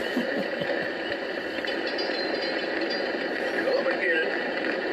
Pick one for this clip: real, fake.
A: fake